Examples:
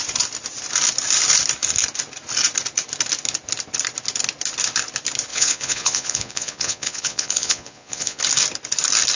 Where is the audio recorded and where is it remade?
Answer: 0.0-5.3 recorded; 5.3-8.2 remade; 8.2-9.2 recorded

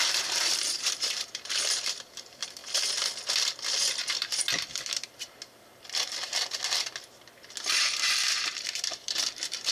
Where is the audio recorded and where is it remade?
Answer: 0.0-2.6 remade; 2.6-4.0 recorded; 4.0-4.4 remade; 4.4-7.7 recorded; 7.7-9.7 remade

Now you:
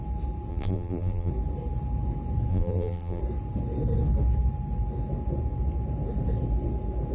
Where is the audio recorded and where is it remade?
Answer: 0.0-0.5 recorded; 0.5-1.3 remade; 1.3-2.5 recorded; 2.5-3.2 remade; 3.2-7.1 recorded

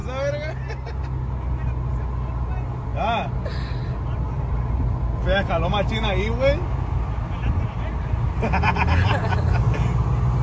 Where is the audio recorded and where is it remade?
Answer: 0.0-10.4 recorded

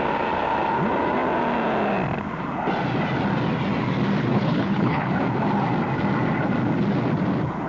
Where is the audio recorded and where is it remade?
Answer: 0.0-4.3 recorded; 4.3-5.1 remade; 5.1-7.7 recorded